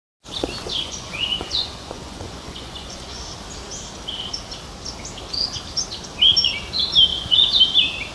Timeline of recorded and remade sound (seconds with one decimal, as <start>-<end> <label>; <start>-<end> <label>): 0.0-0.6 recorded; 0.6-3.2 remade; 3.2-7.1 recorded; 7.1-7.6 remade; 7.6-8.1 recorded